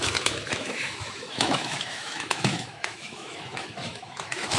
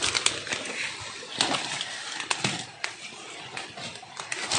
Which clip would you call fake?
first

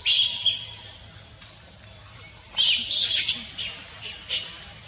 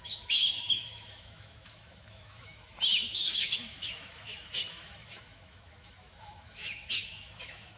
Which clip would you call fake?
second